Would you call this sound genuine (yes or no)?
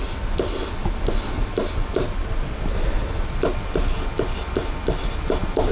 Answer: yes